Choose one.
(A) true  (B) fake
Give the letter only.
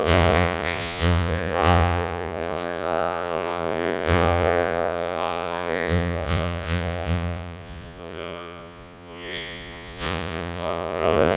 B